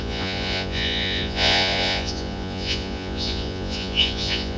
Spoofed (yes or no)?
yes